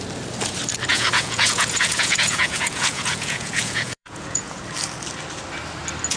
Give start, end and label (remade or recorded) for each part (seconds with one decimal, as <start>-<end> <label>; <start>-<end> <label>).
0.0-0.9 recorded; 0.9-4.6 remade; 4.6-6.2 recorded